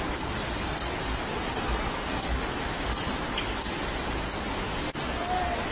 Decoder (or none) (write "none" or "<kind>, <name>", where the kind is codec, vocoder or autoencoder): none